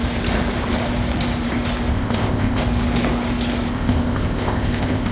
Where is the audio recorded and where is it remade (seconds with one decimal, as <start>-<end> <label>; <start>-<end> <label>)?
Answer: 0.0-1.9 recorded; 1.9-2.6 remade; 2.6-3.7 recorded; 3.7-5.1 remade